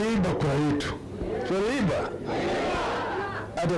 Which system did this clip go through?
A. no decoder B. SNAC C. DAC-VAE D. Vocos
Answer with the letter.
A